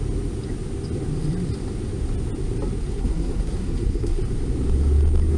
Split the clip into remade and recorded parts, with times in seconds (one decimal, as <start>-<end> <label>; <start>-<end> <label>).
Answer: 0.0-2.9 recorded; 2.9-4.2 remade; 4.2-5.4 recorded